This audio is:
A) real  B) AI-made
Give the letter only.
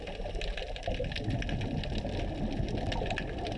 A